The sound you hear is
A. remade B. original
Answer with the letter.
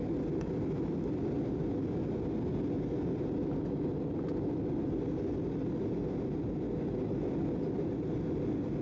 B